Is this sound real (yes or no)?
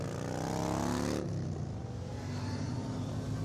yes